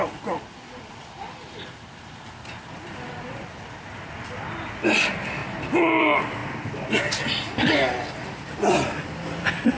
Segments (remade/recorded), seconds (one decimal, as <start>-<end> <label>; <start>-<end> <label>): 0.0-5.4 remade; 5.4-6.0 recorded; 6.0-6.4 remade; 6.4-8.5 recorded; 8.5-9.8 remade